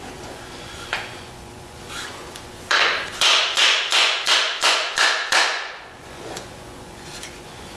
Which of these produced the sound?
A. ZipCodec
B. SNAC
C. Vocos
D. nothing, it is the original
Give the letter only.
C